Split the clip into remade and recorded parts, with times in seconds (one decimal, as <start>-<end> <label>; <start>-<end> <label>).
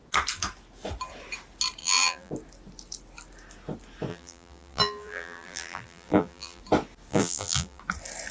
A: 0.0-1.8 recorded; 1.8-2.3 remade; 2.3-4.1 recorded; 4.1-6.6 remade; 6.6-7.1 recorded; 7.1-7.8 remade; 7.8-8.3 recorded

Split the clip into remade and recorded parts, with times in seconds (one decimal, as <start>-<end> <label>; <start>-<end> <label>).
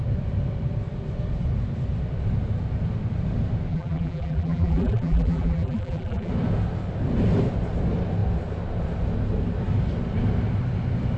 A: 0.0-3.7 recorded; 3.7-6.3 remade; 6.3-11.2 recorded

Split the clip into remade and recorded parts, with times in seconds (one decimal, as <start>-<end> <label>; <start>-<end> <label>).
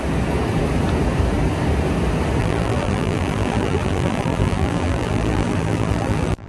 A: 0.0-2.4 recorded; 2.4-6.5 remade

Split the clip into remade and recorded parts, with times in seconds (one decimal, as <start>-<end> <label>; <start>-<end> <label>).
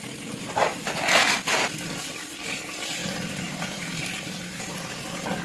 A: 0.0-3.0 recorded; 3.0-4.0 remade; 4.0-5.4 recorded